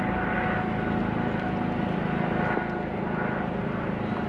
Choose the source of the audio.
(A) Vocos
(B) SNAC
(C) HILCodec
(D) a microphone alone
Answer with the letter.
D